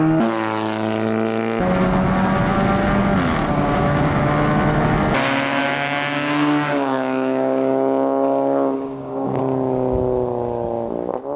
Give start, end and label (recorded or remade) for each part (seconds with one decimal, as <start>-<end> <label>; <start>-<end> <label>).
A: 0.0-3.5 recorded; 3.5-4.2 remade; 4.2-5.6 recorded; 5.6-9.4 remade; 9.4-11.4 recorded